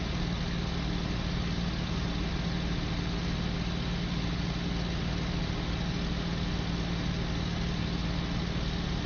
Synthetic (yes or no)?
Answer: no